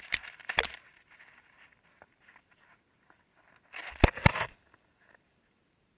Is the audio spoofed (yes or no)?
no